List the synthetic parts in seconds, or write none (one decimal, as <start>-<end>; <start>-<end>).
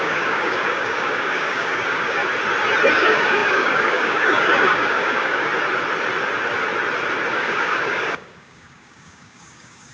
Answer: 0.0-2.2; 2.9-5.5; 7.3-9.9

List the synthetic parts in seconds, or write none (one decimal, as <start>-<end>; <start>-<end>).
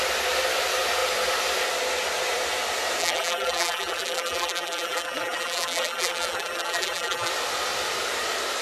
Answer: 3.0-7.3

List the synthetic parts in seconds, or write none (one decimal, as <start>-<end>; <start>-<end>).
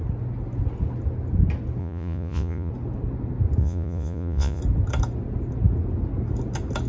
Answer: 1.8-2.7; 3.6-4.6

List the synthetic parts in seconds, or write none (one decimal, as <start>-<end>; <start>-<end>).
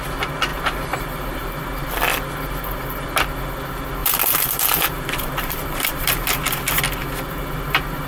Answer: 0.5-1.5; 4.0-6.3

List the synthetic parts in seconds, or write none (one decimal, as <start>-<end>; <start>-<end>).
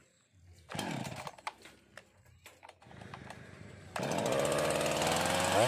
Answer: 0.7-1.3; 3.2-4.0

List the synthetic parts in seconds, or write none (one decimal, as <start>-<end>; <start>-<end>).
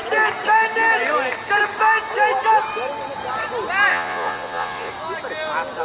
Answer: 3.9-4.9